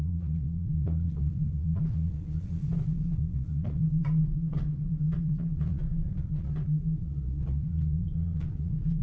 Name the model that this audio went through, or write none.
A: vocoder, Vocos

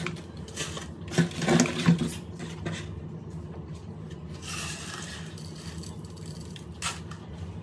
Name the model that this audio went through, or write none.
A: none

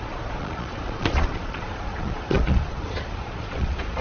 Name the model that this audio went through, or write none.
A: vocoder, Vocos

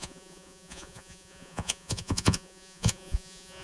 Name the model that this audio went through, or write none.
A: vocoder, Vocos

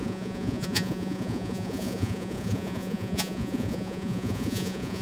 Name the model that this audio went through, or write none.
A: vocoder, Vocos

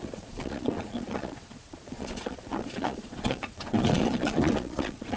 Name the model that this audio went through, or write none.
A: vocoder, Vocos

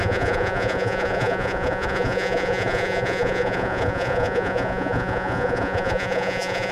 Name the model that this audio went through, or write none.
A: vocoder, Vocos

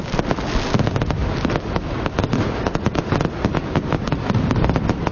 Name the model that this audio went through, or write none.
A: none